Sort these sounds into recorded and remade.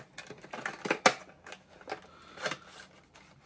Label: recorded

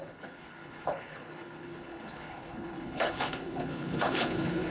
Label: remade